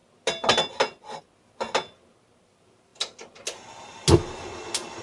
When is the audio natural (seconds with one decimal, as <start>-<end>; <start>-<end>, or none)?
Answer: 0.0-5.0